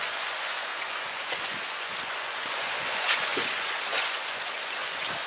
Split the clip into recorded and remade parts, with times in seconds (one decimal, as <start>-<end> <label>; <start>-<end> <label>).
0.0-5.3 remade